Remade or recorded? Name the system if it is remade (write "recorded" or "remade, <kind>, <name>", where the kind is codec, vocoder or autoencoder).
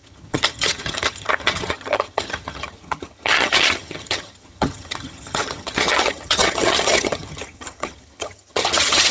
remade, vocoder, HiFi-GAN